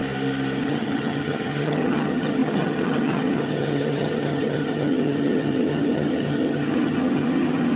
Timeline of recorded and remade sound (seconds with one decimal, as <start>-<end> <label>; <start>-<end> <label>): 0.0-0.6 recorded; 0.6-7.8 remade